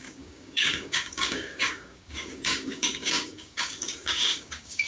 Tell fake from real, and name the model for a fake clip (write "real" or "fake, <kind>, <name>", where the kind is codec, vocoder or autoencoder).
fake, codec, DAC